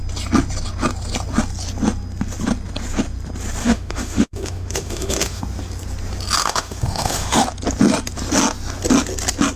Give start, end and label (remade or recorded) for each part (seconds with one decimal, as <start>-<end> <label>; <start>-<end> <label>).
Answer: 0.0-3.6 recorded; 3.6-5.4 remade; 5.4-6.4 recorded; 6.4-7.4 remade; 7.4-9.6 recorded